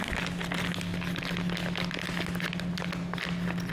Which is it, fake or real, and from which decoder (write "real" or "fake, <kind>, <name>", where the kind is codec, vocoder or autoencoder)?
real